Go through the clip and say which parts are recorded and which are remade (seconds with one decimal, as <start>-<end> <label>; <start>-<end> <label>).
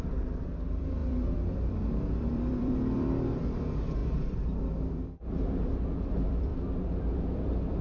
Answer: 0.0-7.8 remade